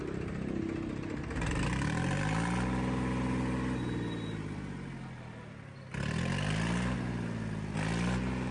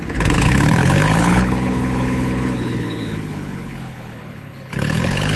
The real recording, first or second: first